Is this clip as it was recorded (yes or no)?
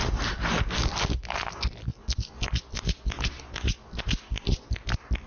yes